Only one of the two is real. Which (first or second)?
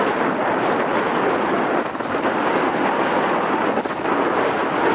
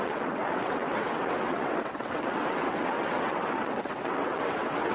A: first